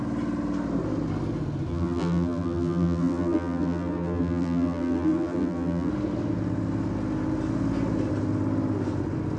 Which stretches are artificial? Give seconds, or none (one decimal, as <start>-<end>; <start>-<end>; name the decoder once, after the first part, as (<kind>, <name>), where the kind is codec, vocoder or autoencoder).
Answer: 1.7-5.9 (vocoder, BigVGAN v2)